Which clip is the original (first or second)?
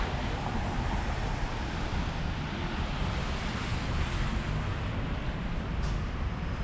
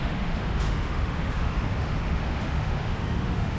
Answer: first